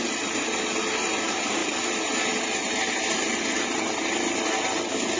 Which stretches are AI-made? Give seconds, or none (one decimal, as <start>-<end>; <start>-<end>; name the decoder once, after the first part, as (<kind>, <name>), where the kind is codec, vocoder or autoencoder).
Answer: none